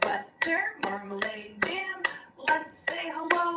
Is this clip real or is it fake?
fake